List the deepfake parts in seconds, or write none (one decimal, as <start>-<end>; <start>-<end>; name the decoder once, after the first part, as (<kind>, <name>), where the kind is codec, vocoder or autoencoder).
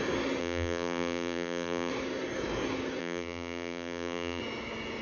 0.4-1.9 (vocoder, BigVGAN v2); 3.0-4.4